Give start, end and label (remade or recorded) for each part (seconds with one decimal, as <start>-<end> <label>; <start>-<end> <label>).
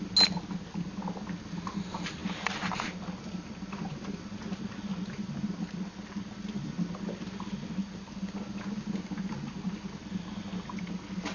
0.0-2.2 recorded; 2.2-3.7 remade; 3.7-4.9 recorded; 4.9-7.9 remade; 7.9-10.0 recorded; 10.0-10.8 remade; 10.8-11.3 recorded